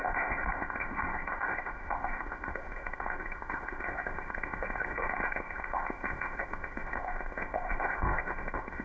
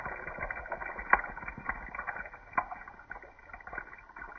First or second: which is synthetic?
first